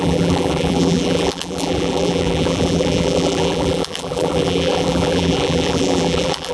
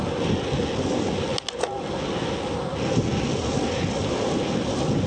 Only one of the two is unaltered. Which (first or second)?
second